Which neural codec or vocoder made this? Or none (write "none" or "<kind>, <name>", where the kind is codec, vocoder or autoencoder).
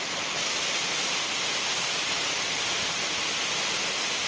none